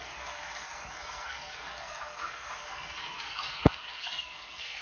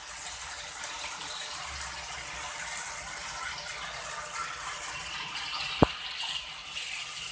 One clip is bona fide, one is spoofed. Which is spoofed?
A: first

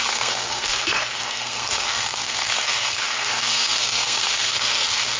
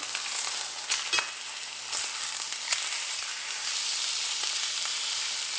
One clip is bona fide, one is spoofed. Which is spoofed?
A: first